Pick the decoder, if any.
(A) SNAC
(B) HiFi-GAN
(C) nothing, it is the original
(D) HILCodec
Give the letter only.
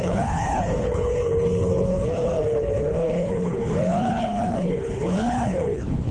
D